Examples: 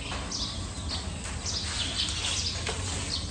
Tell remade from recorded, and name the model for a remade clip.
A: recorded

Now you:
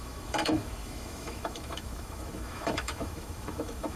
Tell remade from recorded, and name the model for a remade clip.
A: remade, autoencoder, DAC-VAE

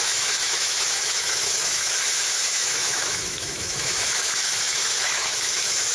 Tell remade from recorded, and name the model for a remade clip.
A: remade, autoencoder, DAC-VAE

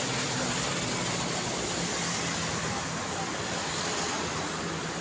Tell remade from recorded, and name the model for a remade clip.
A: recorded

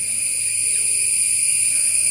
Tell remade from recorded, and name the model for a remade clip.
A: recorded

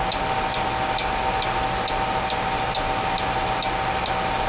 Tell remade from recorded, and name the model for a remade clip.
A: recorded